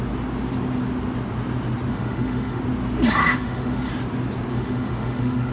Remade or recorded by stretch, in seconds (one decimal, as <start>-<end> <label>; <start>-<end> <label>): 0.0-1.9 recorded; 1.9-2.6 remade; 2.6-3.2 recorded; 3.2-3.9 remade; 3.9-4.5 recorded; 4.5-5.5 remade